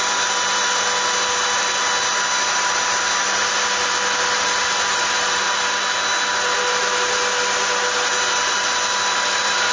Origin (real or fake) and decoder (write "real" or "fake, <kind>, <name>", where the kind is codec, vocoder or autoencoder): real